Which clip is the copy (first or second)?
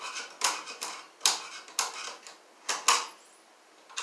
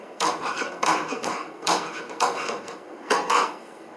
second